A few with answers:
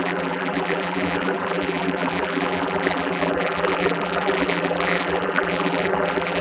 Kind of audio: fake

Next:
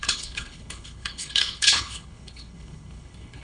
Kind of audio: fake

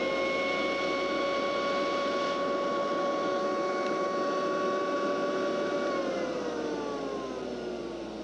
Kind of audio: real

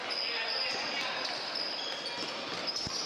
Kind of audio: real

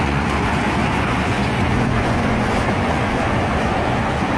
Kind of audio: fake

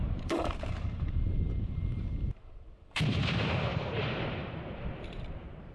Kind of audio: fake